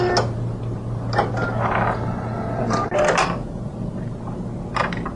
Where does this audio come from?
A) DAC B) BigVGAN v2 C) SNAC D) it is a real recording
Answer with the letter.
D